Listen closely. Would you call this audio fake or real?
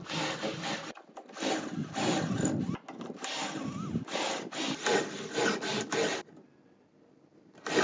real